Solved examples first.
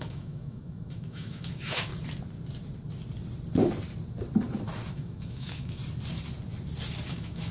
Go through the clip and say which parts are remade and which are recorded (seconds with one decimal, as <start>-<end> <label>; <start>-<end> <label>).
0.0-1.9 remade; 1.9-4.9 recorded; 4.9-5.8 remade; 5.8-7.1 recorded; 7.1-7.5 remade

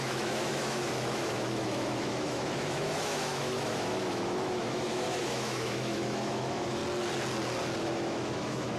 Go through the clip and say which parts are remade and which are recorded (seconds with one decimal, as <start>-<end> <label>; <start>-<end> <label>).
0.0-6.8 remade; 6.8-7.8 recorded; 7.8-8.8 remade

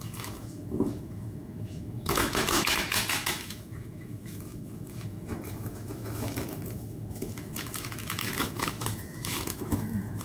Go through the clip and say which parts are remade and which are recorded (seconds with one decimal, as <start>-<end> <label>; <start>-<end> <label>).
0.0-10.2 remade